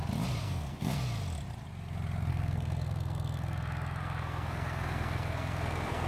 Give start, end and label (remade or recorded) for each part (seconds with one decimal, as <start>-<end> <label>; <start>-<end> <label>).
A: 0.0-0.4 recorded; 0.4-1.0 remade; 1.0-2.3 recorded; 2.3-6.1 remade